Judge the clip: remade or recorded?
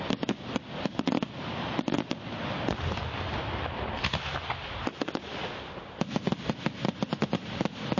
remade